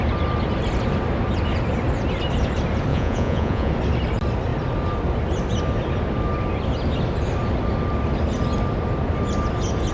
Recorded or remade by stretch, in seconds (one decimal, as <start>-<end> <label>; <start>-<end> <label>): 0.0-2.9 recorded; 2.9-3.7 remade; 3.7-9.9 recorded